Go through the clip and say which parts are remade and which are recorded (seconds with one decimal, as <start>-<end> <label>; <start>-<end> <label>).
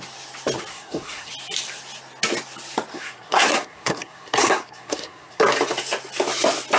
0.0-0.7 recorded; 0.7-1.3 remade; 1.3-2.9 recorded; 2.9-5.4 remade; 5.4-6.8 recorded